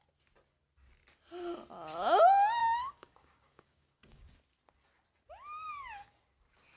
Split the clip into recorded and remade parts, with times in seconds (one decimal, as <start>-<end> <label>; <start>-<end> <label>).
0.0-2.6 recorded; 2.6-4.3 remade; 4.3-6.8 recorded